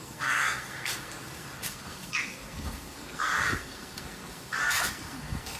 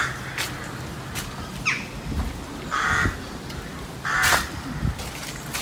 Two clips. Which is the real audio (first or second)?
second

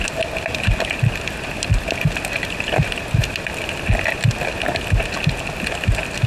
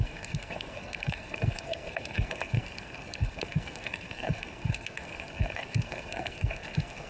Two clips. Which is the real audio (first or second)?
first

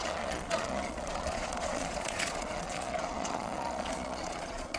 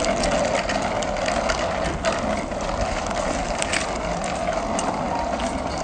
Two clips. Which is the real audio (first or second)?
second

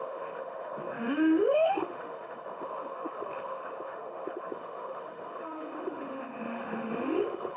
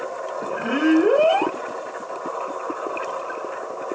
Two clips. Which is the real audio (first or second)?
second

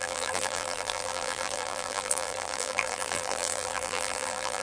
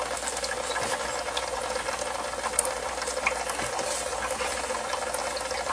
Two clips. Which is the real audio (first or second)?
second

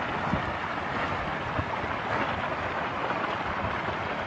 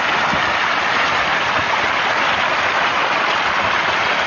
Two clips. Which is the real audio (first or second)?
first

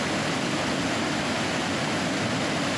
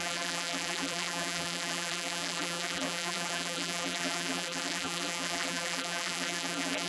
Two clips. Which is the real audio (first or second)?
first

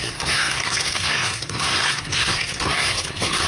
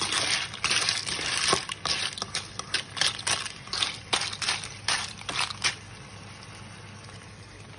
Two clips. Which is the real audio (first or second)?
second